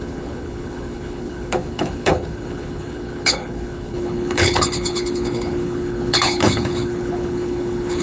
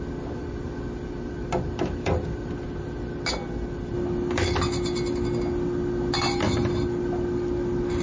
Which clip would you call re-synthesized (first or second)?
first